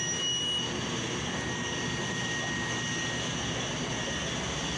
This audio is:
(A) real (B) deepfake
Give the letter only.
A